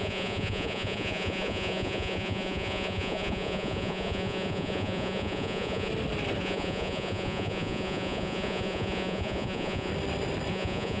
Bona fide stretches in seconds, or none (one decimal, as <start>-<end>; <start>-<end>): 5.9-6.4; 9.9-10.5